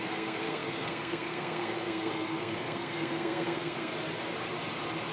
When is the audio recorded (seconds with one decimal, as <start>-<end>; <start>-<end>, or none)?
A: 3.9-5.1